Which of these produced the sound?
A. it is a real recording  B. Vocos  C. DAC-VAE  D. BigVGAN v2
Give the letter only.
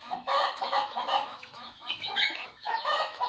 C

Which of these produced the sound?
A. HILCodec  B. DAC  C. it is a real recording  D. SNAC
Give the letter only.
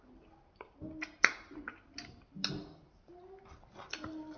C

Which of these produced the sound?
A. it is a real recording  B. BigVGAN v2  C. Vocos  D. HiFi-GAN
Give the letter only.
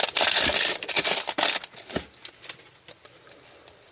A